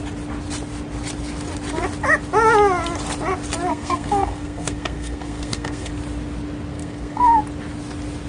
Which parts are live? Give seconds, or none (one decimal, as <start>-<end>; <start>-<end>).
0.0-3.7; 5.9-6.7; 7.4-8.3